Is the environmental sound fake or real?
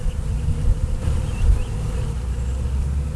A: real